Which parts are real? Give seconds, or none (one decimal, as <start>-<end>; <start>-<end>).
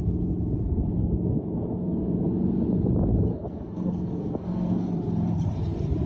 0.0-1.0; 2.1-3.3; 4.9-6.1